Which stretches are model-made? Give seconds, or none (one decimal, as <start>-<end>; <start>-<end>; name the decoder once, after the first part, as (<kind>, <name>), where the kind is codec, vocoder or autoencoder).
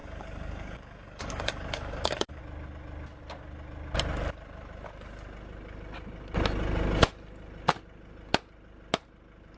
0.0-2.4 (codec, DAC)